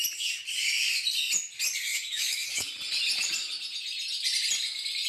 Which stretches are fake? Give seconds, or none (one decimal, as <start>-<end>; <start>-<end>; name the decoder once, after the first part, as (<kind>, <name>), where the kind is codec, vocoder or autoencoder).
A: 1.9-2.7 (autoencoder, DAC-VAE)